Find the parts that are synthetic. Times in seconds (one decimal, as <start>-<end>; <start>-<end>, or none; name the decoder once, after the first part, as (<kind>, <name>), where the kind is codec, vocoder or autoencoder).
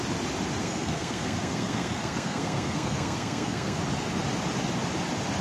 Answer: 0.6-3.8 (codec, SNAC)